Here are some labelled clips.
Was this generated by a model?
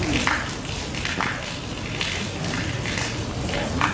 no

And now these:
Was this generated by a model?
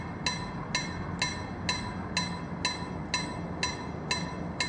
no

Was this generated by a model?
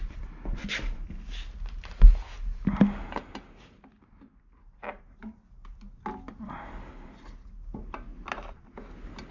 no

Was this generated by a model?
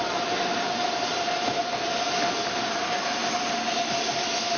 no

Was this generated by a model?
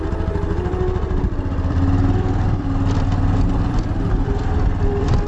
yes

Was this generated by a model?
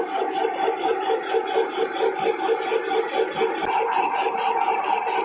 no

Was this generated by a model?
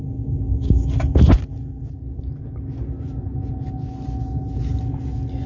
no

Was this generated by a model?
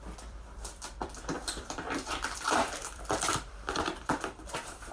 yes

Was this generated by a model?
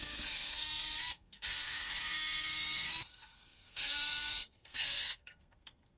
yes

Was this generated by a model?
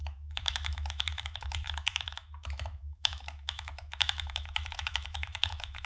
yes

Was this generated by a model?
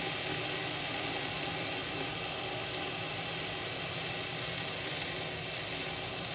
no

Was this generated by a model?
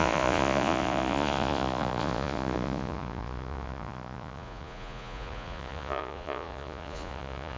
yes